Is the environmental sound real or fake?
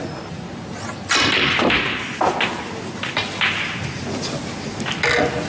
real